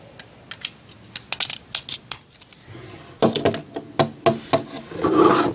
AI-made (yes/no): no